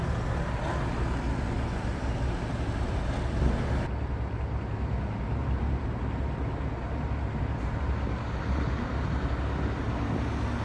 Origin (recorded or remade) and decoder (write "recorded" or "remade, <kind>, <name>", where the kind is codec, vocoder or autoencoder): recorded